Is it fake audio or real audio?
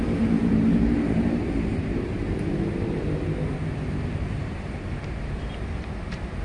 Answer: fake